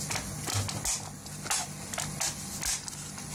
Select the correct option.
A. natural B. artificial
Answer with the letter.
A